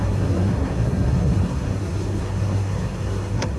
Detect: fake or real fake